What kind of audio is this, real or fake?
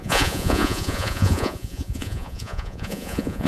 fake